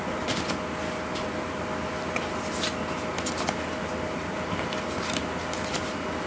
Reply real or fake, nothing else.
real